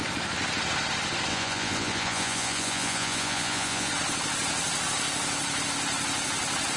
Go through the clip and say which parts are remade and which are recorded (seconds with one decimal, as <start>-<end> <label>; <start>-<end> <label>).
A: 0.0-1.3 recorded; 1.3-3.9 remade; 3.9-6.8 recorded